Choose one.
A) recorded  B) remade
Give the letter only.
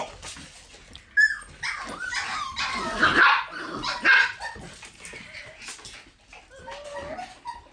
A